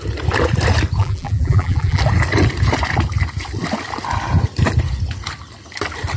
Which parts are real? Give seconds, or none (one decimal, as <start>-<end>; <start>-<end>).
0.0-1.0; 2.0-6.2